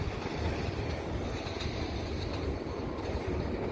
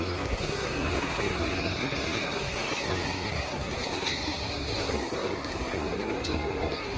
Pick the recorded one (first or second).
first